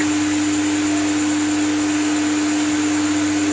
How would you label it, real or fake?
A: real